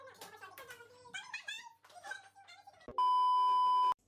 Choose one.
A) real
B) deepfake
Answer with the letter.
A